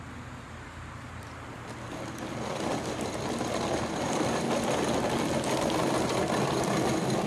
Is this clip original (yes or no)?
yes